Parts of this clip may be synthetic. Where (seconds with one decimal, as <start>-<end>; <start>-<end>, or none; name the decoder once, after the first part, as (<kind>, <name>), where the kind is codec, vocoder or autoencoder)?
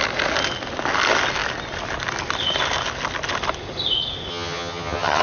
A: 4.3-5.2 (vocoder, HiFi-GAN)